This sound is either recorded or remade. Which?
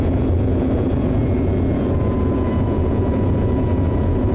remade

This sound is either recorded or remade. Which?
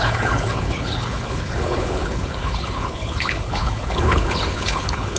remade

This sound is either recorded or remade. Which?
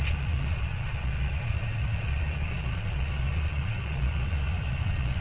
remade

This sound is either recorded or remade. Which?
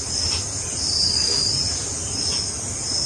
recorded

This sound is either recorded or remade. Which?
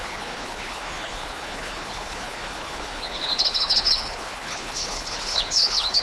remade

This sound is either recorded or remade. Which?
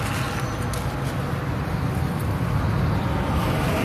recorded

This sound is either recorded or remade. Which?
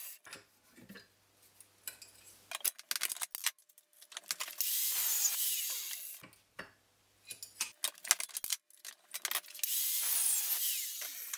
recorded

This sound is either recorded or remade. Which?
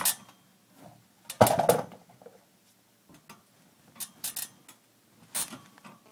recorded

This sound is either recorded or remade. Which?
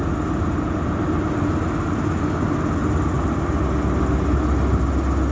recorded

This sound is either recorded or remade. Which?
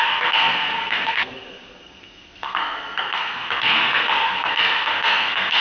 remade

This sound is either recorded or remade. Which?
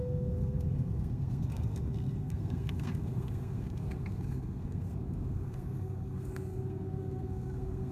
remade